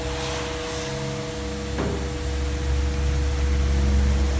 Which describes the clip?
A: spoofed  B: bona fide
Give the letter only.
B